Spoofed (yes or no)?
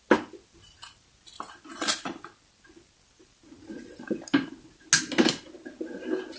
no